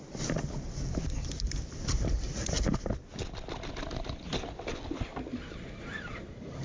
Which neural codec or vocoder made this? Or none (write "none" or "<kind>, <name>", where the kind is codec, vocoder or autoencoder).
none